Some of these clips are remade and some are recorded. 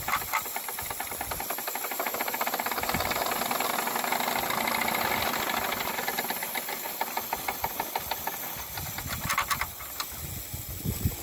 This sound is recorded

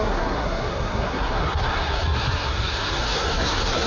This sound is remade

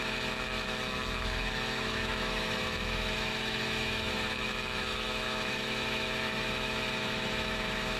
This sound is remade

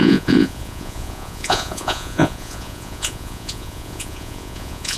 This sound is remade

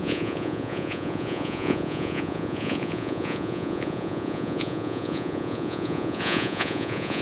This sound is remade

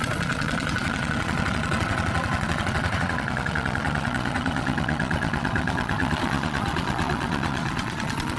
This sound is remade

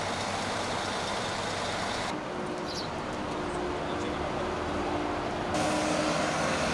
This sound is recorded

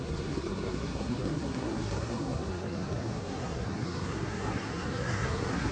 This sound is remade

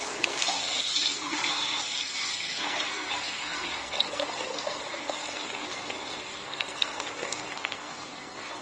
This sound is remade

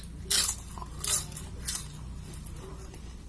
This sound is recorded